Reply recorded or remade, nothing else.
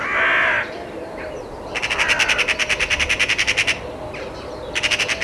recorded